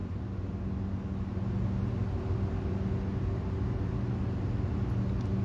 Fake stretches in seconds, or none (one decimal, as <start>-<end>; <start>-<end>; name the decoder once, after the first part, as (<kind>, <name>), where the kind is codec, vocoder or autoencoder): none

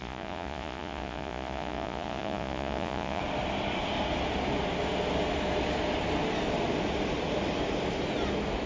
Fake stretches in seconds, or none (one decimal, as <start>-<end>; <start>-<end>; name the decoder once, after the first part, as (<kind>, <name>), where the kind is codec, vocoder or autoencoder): 0.0-3.2 (vocoder, Vocos)

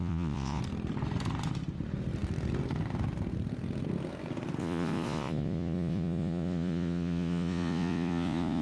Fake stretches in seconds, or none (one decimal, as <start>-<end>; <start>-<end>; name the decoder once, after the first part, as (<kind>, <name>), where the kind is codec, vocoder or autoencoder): 0.0-0.6 (vocoder, Vocos); 4.6-8.6

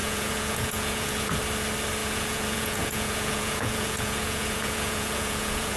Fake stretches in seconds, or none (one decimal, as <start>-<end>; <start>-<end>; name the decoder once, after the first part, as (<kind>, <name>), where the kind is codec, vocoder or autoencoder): 0.0-1.4 (vocoder, Vocos); 2.0-5.8

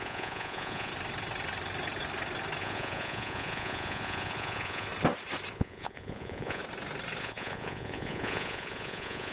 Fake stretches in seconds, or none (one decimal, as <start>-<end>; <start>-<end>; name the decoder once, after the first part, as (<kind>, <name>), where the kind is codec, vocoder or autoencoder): 0.0-0.9 (vocoder, Vocos); 2.6-4.9; 5.5-6.6; 7.2-9.3